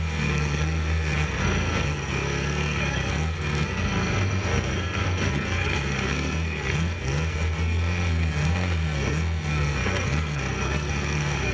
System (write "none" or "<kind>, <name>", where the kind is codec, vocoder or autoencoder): codec, SNAC